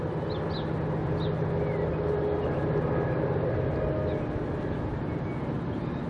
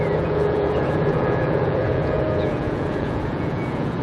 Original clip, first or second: first